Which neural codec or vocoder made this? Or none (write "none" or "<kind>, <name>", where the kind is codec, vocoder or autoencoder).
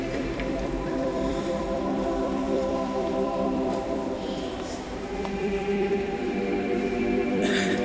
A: vocoder, BigVGAN v2